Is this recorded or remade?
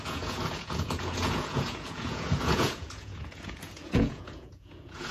remade